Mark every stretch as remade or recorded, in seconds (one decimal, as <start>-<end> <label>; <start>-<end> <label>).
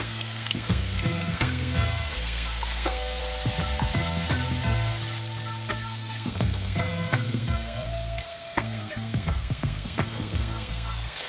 0.0-3.2 remade; 3.2-5.7 recorded; 5.7-11.3 remade